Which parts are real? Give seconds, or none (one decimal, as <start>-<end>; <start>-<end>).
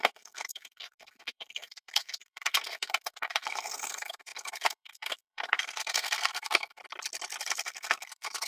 6.8-7.4